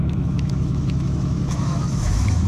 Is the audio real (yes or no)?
no